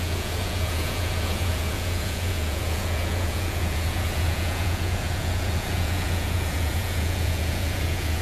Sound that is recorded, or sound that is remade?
remade